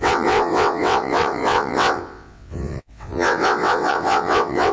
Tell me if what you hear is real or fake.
fake